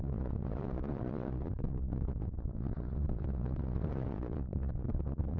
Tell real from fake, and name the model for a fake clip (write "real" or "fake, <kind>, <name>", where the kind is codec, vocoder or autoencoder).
fake, vocoder, Vocos